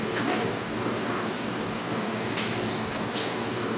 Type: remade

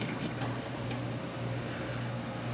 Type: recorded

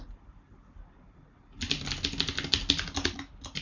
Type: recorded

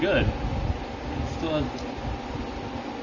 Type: recorded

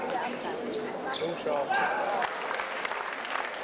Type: recorded